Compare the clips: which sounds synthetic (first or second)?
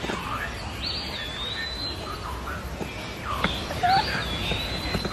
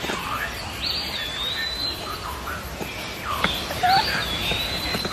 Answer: second